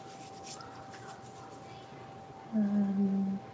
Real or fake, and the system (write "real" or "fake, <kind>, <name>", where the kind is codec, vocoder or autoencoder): real